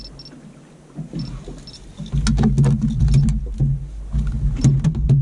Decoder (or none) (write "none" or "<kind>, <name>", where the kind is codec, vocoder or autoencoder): none